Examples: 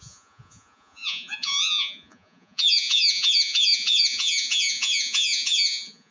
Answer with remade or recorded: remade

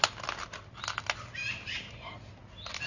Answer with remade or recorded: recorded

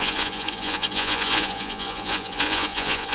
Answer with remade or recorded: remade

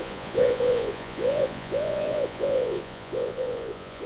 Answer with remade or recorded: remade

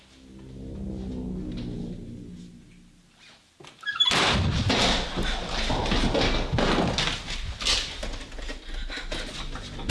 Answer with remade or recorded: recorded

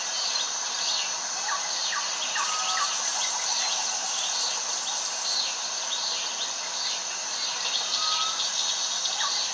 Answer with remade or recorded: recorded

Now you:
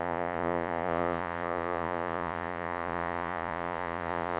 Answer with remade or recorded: remade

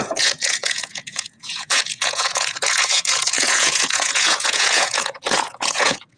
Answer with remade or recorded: remade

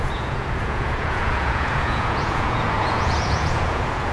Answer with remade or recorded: remade